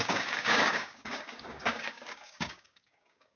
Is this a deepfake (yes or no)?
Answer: yes